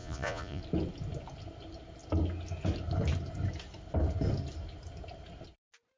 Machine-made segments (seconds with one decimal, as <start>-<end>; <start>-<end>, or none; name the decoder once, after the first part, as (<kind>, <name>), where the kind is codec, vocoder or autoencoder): 0.0-0.6 (vocoder, Vocos)